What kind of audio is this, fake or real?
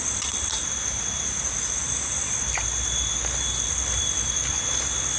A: real